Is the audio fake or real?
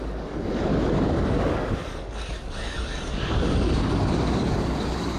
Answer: fake